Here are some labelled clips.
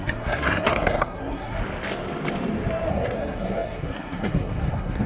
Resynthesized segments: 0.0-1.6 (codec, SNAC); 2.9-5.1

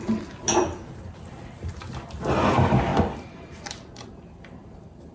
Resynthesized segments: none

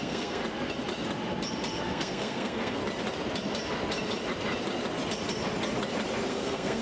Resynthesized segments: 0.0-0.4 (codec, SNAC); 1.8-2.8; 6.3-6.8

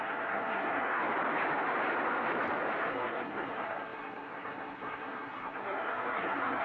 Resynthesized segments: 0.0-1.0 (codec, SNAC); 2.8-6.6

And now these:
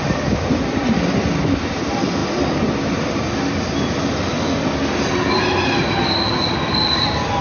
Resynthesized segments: none